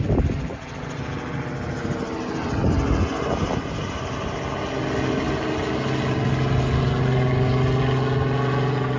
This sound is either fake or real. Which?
real